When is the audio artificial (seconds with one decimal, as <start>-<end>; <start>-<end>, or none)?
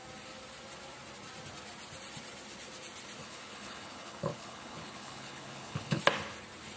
3.2-6.0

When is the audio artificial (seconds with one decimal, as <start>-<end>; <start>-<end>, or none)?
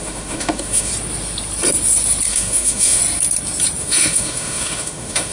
0.0-0.9; 2.3-3.0; 3.8-5.3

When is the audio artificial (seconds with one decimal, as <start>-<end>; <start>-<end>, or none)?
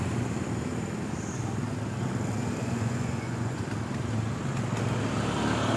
2.6-3.6